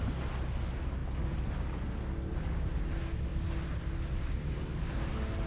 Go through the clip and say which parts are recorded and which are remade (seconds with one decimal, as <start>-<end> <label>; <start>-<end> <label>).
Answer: 0.0-5.5 recorded